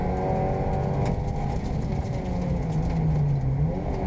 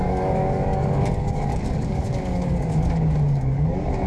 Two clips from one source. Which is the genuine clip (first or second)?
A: first